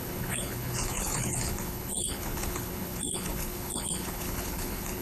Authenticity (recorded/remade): remade